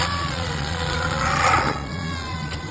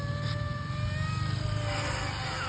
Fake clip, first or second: first